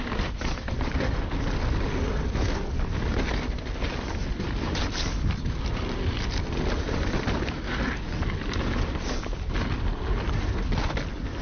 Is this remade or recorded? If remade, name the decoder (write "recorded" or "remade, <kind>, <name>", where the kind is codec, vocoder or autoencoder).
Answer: recorded